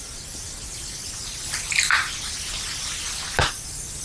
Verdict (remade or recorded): recorded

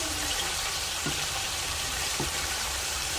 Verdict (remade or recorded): remade